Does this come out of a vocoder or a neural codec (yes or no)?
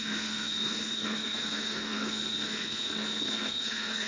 yes